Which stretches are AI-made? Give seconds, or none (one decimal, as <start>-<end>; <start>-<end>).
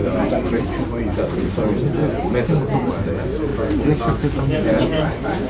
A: 0.0-2.0; 2.9-5.5